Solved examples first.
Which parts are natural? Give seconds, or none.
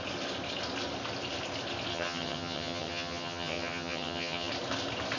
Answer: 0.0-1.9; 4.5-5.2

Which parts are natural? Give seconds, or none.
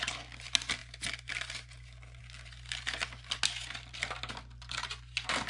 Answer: 0.0-5.5